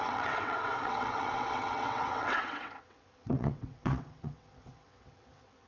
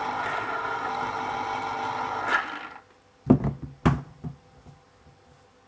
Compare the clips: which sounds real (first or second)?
second